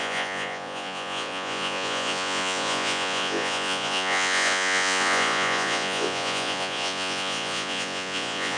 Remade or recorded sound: remade